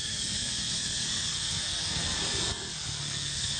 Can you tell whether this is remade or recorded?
remade